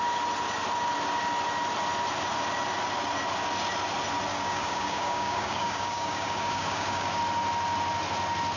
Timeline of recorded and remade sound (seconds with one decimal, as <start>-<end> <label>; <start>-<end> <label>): 0.0-4.3 recorded; 4.3-7.2 remade; 7.2-8.6 recorded